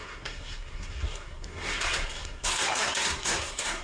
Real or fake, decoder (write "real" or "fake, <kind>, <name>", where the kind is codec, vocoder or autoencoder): fake, codec, SNAC